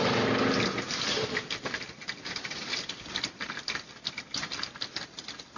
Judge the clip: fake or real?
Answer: real